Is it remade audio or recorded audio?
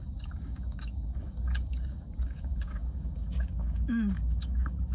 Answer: remade